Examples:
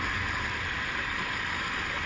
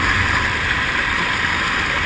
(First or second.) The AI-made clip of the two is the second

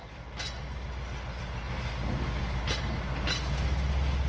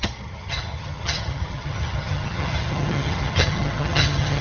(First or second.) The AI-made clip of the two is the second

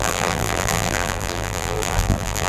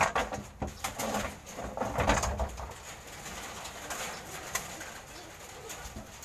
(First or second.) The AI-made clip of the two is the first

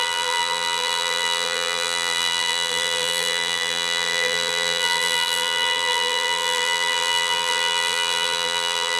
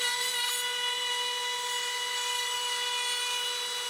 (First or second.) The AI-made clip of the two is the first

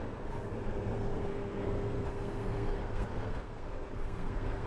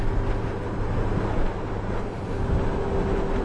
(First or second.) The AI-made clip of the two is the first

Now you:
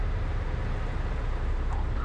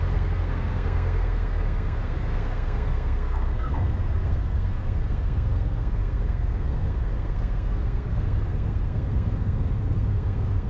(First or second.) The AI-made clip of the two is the second